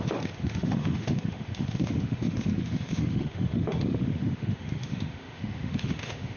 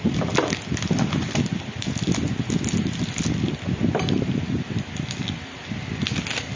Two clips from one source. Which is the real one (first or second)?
second